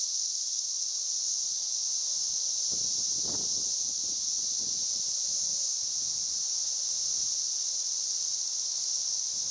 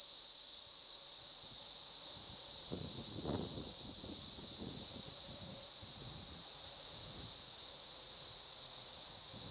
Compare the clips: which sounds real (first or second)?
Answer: first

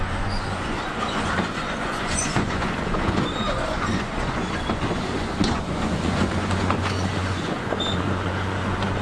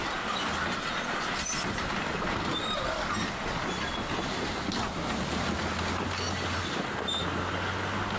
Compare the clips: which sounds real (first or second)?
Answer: second